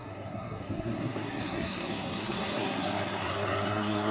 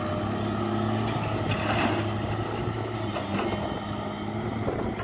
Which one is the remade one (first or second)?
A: first